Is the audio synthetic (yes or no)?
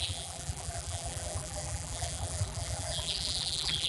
yes